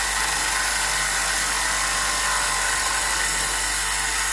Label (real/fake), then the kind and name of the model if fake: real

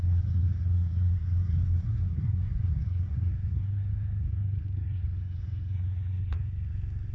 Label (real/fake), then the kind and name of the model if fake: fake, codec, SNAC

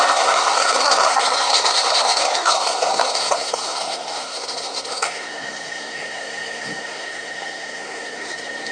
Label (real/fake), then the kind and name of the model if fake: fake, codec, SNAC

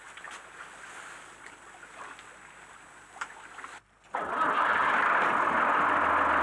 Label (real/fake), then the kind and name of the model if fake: real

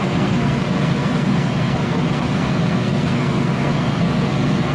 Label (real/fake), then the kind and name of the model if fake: fake, codec, SNAC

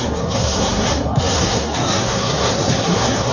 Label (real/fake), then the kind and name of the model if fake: fake, codec, SNAC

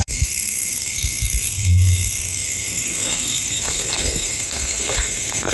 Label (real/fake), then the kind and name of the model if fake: fake, codec, SNAC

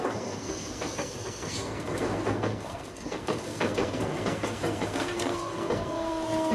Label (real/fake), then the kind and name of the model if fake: fake, codec, SNAC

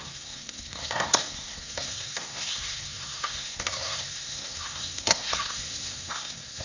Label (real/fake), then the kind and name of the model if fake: fake, codec, SNAC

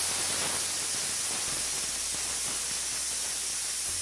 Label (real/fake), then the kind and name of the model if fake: real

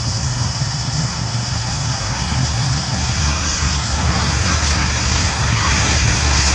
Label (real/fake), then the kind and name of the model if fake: fake, codec, SNAC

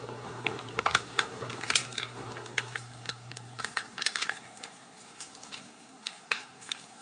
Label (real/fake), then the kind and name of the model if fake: fake, codec, SNAC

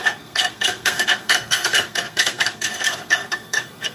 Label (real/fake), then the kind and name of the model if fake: fake, codec, SNAC